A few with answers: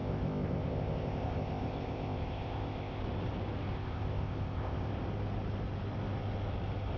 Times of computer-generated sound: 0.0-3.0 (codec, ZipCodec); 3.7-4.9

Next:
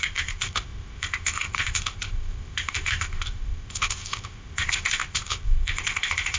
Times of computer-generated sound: 0.0-6.4 (codec, ZipCodec)

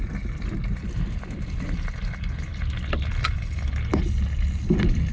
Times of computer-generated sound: none

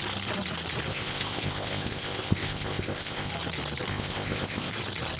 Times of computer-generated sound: 0.9-3.3 (codec, ZipCodec); 3.9-4.7

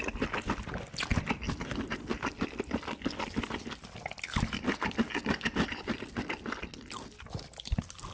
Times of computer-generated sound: none